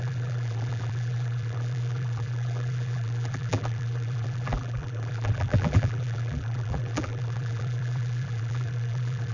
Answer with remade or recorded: remade